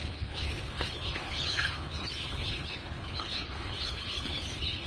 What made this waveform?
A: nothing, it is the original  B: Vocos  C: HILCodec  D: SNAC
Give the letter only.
C